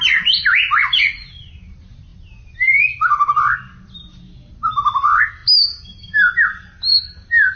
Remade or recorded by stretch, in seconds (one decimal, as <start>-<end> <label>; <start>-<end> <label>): 0.0-7.6 recorded